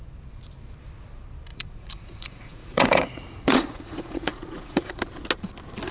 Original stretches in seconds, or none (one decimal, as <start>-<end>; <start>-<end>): 0.0-1.5; 5.0-5.9